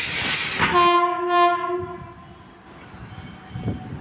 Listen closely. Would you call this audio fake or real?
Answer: real